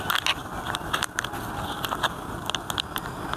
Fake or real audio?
real